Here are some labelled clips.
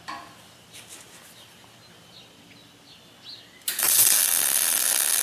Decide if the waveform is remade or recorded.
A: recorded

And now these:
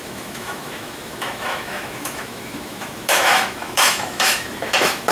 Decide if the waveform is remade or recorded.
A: remade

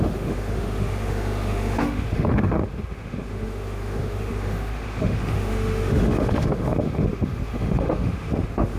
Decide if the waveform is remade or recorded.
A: remade